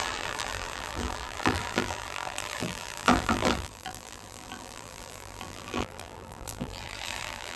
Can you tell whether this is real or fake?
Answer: fake